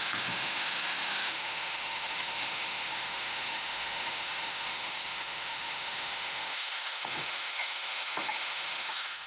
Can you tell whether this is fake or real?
fake